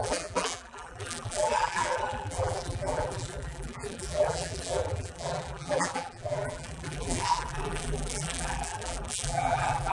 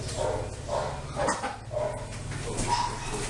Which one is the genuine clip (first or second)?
second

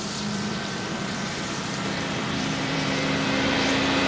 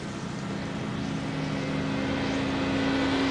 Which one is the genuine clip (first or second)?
second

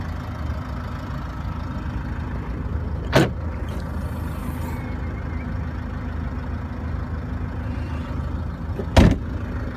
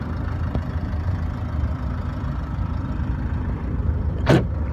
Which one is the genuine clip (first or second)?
first